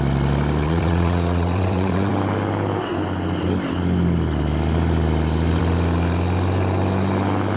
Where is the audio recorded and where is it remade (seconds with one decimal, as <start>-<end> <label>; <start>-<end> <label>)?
0.0-0.6 recorded; 0.6-2.1 remade; 2.1-7.6 recorded